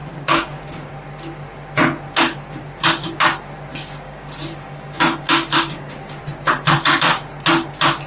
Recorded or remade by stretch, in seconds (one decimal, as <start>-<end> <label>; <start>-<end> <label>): 0.0-0.9 remade; 0.9-3.7 recorded; 3.7-6.2 remade; 6.2-8.1 recorded